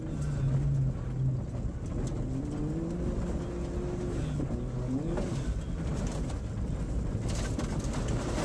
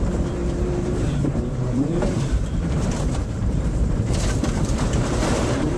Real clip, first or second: first